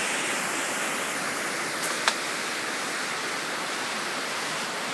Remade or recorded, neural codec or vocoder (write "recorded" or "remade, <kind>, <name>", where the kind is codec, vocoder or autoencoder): recorded